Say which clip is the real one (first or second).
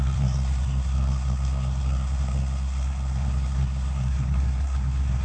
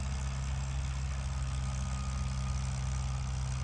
second